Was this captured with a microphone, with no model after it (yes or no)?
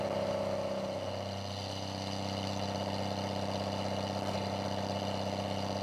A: yes